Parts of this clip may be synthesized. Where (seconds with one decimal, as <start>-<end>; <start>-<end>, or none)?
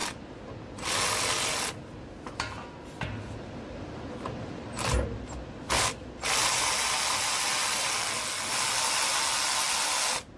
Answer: none